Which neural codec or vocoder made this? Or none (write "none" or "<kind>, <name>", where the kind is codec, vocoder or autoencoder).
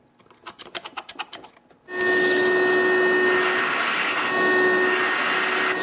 none